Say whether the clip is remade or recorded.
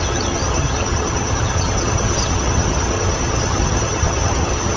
remade